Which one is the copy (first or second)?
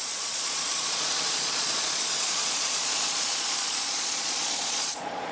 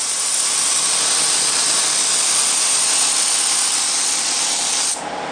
first